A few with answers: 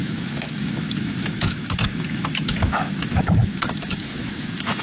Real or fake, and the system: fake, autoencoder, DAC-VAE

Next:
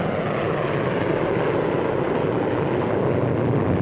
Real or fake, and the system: real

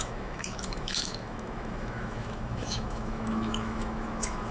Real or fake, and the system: fake, autoencoder, DAC-VAE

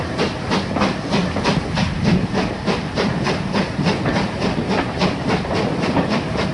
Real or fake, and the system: real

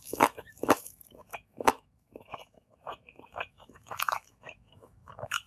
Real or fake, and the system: fake, autoencoder, DAC-VAE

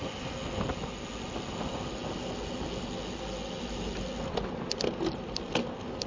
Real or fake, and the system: real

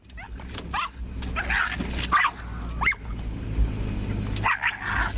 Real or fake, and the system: real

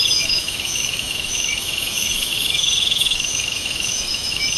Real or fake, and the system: fake, autoencoder, DAC-VAE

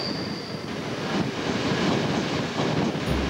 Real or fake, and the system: real